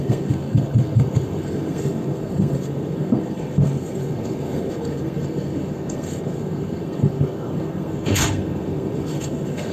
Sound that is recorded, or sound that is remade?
remade